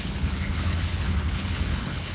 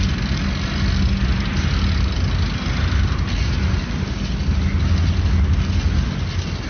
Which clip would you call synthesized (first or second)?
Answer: first